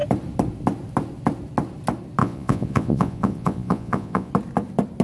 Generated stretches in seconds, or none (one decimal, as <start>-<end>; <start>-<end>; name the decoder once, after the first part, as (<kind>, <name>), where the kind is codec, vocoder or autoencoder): 2.2-4.3 (vocoder, Vocos)